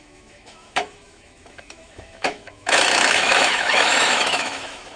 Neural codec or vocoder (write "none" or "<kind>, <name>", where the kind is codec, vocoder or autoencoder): autoencoder, DAC-VAE